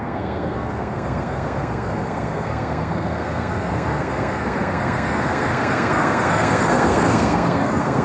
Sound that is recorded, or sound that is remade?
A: remade